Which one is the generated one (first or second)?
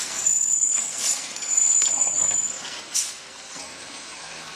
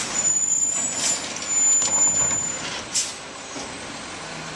first